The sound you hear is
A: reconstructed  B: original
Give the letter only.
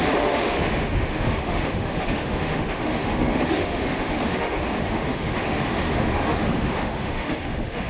A